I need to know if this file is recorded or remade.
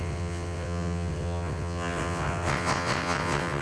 remade